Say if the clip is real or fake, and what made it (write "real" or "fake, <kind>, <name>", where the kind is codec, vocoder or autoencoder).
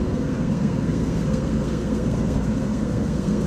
fake, codec, SNAC